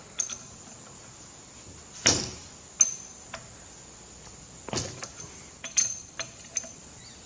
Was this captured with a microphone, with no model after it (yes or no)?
yes